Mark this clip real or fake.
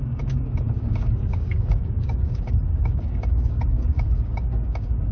fake